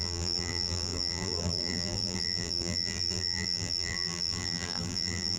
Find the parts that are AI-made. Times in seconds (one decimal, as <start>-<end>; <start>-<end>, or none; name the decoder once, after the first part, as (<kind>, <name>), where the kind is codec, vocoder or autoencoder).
0.0-5.4 (vocoder, BigVGAN v2)